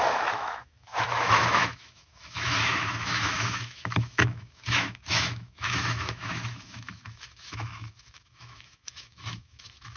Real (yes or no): no